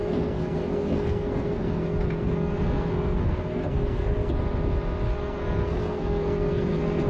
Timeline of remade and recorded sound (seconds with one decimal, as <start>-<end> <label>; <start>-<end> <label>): 0.0-4.3 remade; 4.3-5.1 recorded; 5.1-7.1 remade